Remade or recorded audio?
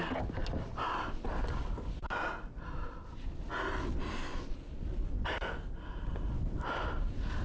recorded